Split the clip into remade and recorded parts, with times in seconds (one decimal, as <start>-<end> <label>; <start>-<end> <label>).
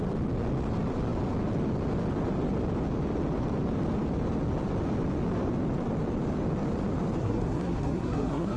0.0-7.2 recorded; 7.2-8.6 remade